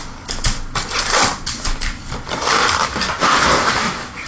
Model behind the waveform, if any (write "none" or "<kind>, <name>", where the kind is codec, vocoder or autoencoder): none